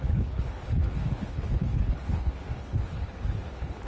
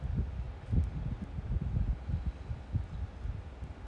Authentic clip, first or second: second